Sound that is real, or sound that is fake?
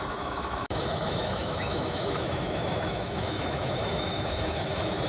fake